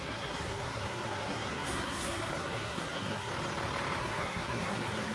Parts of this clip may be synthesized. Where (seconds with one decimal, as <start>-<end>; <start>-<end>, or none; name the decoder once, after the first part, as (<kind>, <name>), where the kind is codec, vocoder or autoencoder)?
0.0-3.3 (codec, SNAC); 4.0-5.1